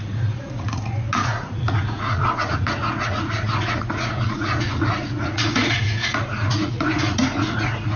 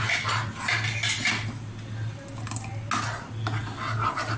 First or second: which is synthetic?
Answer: first